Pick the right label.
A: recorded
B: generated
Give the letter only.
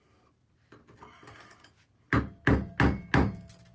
A